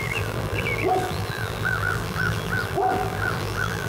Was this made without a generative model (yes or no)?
no